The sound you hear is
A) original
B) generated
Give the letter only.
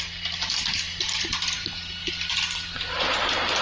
A